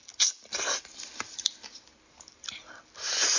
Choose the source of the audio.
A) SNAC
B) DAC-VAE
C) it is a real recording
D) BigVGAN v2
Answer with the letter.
C